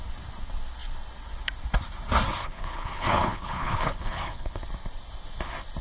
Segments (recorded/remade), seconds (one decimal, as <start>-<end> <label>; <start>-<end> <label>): 0.0-2.4 recorded; 2.4-4.6 remade; 4.6-5.8 recorded